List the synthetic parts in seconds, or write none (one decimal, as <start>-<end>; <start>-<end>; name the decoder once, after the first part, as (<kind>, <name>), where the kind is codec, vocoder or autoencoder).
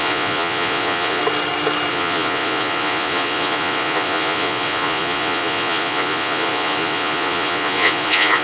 0.0-1.2 (vocoder, Vocos); 1.9-8.4